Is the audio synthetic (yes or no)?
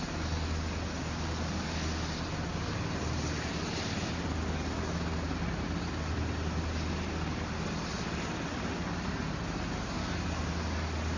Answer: no